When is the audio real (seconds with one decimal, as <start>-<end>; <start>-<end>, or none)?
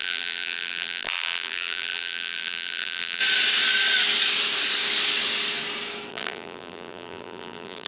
3.2-6.1